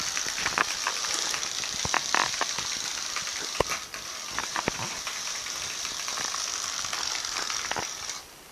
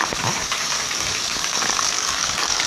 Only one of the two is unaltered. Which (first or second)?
first